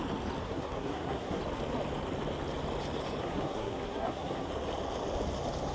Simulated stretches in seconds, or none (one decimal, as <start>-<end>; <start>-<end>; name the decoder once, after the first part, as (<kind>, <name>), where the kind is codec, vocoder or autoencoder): 0.4-1.4 (codec, SNAC); 3.2-4.5